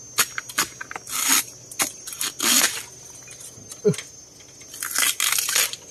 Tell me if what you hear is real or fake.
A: real